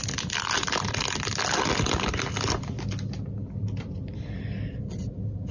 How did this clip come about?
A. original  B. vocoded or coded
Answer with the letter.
A